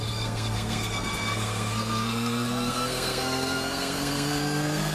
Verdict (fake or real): fake